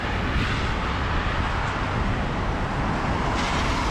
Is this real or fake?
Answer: real